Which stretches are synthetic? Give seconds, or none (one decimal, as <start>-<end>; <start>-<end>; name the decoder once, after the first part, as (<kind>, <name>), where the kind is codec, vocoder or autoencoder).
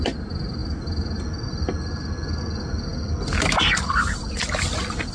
none